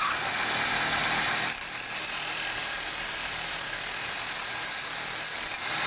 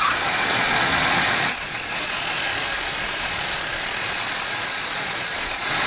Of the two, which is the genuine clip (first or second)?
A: first